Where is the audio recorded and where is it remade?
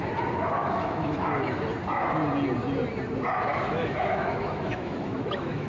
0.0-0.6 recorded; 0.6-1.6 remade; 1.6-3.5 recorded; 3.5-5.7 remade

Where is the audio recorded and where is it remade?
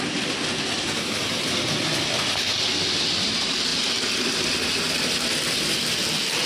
0.0-6.5 recorded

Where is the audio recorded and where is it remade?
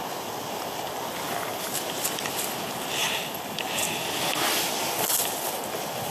0.0-6.1 recorded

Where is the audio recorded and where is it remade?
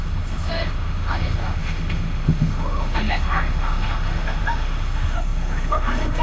0.0-6.2 remade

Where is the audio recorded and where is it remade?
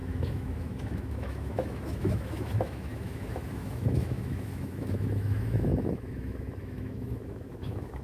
0.0-8.0 remade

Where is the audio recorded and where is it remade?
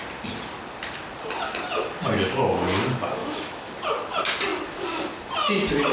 0.0-3.2 recorded; 3.2-3.7 remade; 3.7-5.9 recorded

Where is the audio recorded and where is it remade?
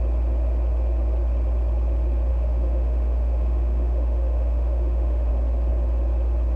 0.0-2.3 recorded; 2.3-5.3 remade; 5.3-6.6 recorded